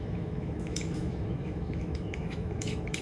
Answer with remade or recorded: remade